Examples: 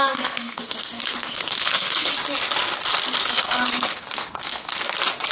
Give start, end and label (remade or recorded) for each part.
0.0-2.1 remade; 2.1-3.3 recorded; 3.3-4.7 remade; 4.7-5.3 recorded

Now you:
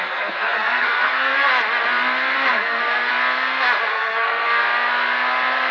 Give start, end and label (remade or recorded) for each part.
0.0-1.3 remade; 1.3-2.5 recorded; 2.5-3.1 remade; 3.1-3.9 recorded; 3.9-4.6 remade; 4.6-5.7 recorded

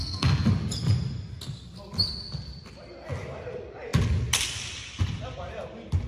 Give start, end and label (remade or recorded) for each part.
0.0-0.5 remade; 0.5-6.1 recorded

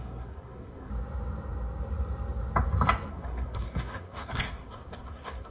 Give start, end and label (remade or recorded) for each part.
0.0-0.9 remade; 0.9-3.1 recorded; 3.1-5.5 remade

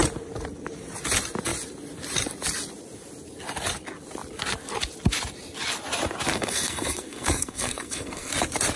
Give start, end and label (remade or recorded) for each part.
0.0-6.3 recorded; 6.3-8.3 remade; 8.3-8.8 recorded

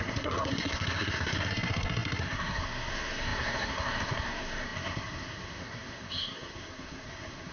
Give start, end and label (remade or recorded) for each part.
0.0-7.5 remade

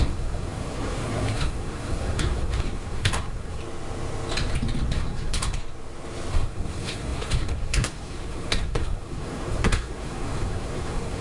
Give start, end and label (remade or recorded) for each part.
0.0-3.6 remade; 3.6-4.9 recorded; 4.9-5.6 remade; 5.6-6.3 recorded; 6.3-11.2 remade